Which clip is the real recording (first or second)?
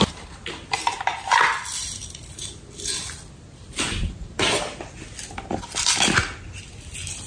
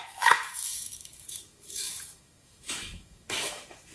first